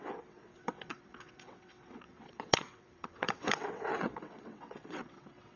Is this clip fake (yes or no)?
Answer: yes